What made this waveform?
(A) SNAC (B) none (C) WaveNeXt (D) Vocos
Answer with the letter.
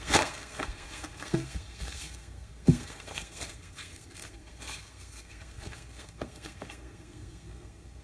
A